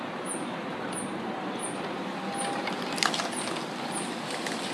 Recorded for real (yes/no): yes